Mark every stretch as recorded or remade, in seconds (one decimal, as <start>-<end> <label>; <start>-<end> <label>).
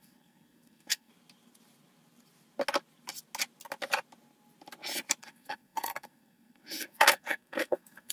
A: 0.0-1.1 remade; 1.1-5.2 recorded; 5.2-8.1 remade